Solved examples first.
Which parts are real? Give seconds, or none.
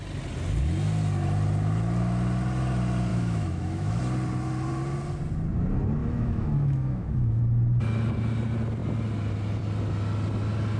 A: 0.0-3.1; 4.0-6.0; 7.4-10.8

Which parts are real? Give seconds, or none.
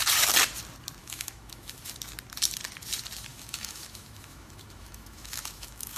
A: 0.0-1.0; 1.9-3.3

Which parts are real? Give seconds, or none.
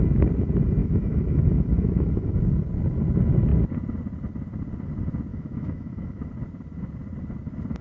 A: 0.0-0.8; 2.4-5.3; 6.3-7.8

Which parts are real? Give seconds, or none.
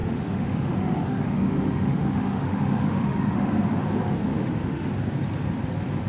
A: 3.5-4.2; 4.9-6.1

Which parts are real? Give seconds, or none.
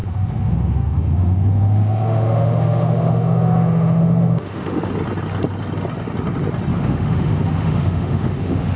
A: 4.9-6.7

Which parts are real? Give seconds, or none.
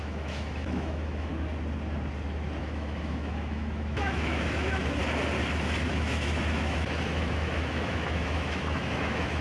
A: 1.3-2.6; 5.0-5.9